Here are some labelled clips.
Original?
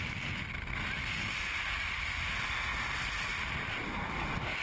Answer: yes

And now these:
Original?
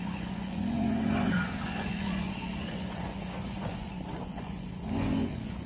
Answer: no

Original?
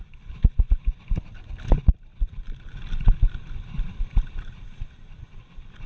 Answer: yes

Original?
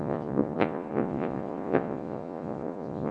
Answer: no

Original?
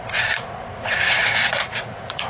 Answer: no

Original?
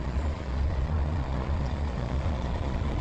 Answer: no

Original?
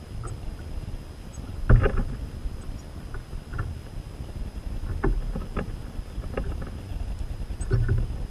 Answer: yes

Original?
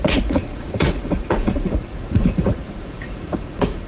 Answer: no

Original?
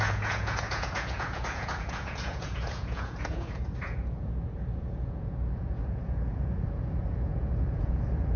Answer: no